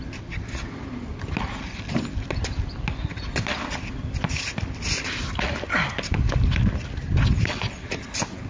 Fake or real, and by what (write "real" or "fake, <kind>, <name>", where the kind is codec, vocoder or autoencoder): real